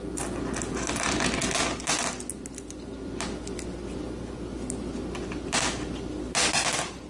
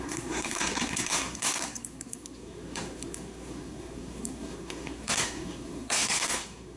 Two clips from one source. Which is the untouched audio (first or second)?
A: first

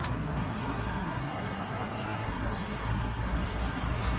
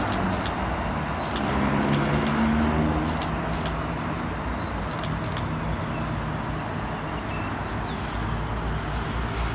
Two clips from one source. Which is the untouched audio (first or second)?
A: second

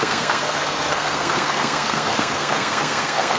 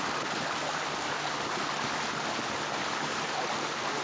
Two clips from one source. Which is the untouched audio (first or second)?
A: second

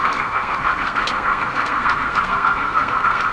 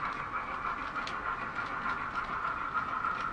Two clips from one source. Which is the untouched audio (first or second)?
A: second